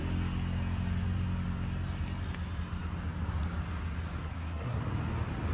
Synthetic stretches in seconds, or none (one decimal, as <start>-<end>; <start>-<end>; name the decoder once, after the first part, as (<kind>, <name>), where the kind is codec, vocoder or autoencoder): 4.2-4.8 (codec, SNAC)